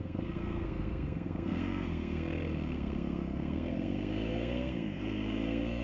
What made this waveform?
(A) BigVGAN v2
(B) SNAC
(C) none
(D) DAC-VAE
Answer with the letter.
B